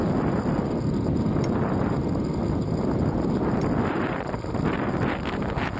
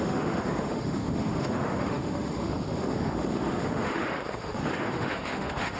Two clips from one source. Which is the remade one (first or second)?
second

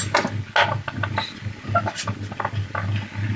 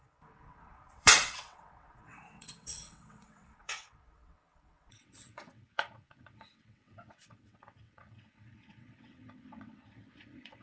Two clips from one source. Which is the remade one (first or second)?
second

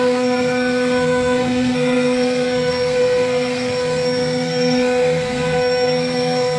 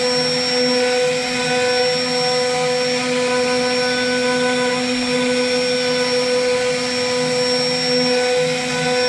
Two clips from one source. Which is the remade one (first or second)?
first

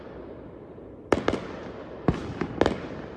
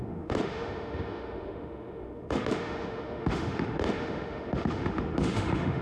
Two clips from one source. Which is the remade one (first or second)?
second